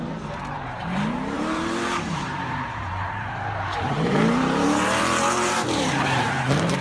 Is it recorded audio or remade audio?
remade